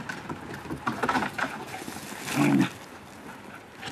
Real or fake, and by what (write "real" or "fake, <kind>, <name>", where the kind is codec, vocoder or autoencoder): real